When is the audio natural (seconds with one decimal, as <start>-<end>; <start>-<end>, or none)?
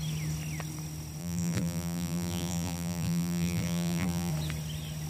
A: 0.0-1.2; 4.3-5.1